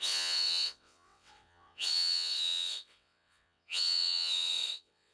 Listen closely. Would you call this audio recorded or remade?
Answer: remade